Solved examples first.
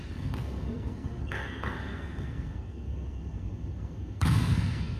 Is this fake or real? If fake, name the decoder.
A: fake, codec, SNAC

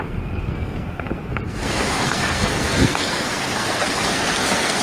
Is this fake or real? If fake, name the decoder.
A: fake, codec, SNAC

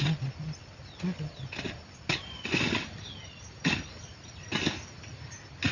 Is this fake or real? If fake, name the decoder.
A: real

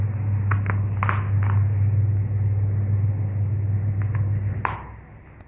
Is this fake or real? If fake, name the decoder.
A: real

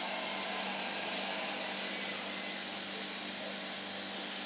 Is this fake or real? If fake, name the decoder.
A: real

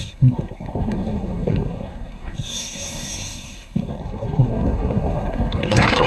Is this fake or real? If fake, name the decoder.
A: fake, codec, SNAC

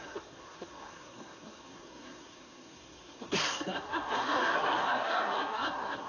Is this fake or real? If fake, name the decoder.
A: fake, codec, SNAC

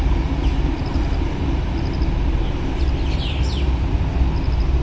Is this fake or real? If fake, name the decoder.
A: real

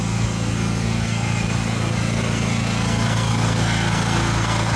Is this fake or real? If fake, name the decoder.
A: fake, codec, SNAC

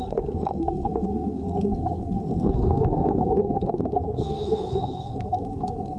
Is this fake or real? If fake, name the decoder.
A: fake, codec, SNAC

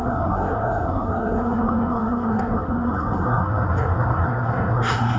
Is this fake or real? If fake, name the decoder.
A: fake, codec, SNAC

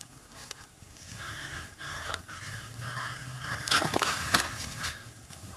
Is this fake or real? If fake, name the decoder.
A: fake, codec, SNAC